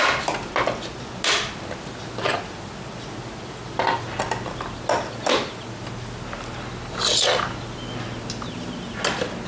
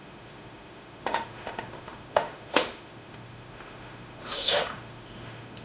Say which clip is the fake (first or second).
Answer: second